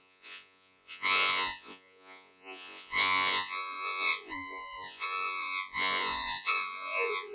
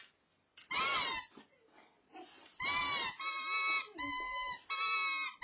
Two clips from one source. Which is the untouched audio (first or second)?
second